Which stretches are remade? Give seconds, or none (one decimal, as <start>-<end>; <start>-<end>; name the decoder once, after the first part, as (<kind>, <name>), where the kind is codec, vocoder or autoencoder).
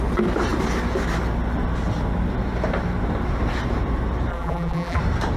4.3-5.0 (vocoder, BigVGAN v2)